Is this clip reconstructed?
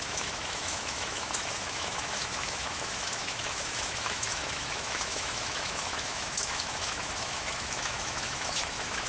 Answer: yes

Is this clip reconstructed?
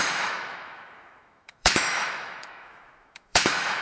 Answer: yes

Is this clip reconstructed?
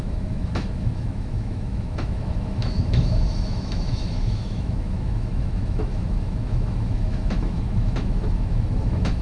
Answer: yes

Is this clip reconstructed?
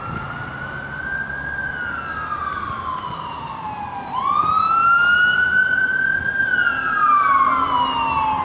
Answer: no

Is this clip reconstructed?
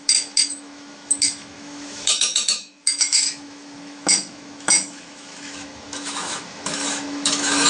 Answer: yes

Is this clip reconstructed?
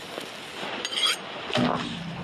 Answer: no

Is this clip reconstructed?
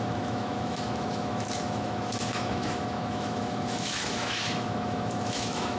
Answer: yes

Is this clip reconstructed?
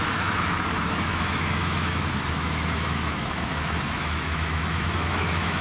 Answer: yes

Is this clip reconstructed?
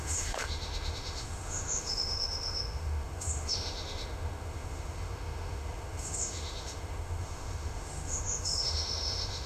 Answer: yes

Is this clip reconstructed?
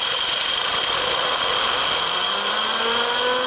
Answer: no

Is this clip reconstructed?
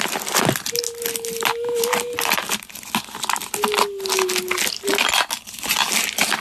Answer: no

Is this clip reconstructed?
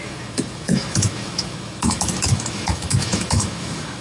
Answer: yes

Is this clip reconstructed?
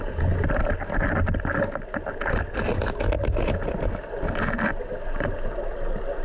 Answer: no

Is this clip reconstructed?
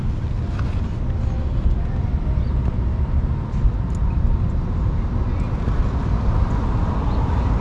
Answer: no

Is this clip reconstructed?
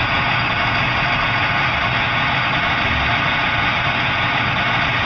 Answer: no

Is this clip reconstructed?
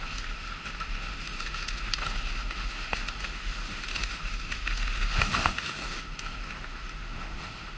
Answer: yes